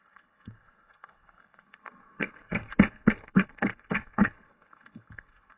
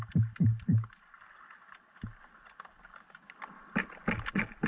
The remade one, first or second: first